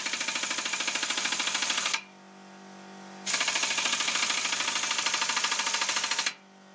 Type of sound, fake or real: real